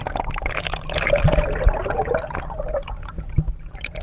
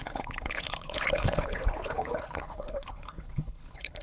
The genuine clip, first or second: first